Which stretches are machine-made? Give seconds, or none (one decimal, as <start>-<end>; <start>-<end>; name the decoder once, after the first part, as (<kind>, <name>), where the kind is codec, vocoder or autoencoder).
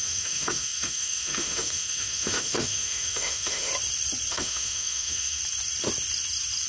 0.0-3.7 (autoencoder, DAC-VAE); 4.3-5.4